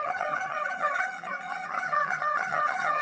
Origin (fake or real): fake